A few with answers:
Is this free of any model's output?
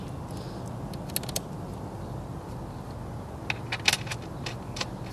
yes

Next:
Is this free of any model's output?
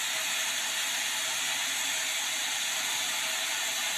yes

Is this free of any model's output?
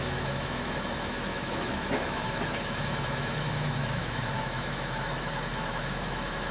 no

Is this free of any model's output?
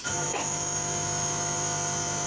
no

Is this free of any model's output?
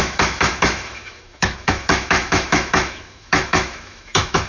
no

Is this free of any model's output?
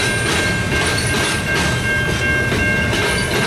yes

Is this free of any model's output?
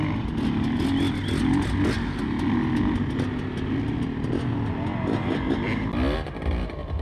yes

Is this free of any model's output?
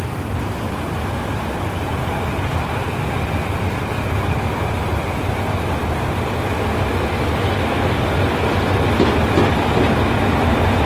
yes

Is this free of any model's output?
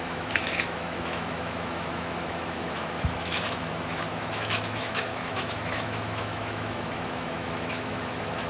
no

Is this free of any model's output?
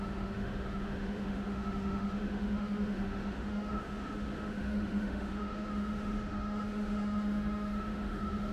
no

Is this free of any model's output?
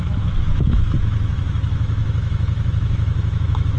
no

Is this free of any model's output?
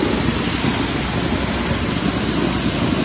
yes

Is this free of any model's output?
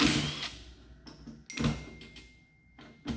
yes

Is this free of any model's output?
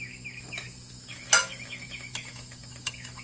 no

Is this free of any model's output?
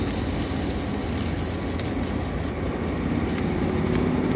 yes